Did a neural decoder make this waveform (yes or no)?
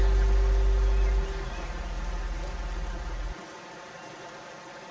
no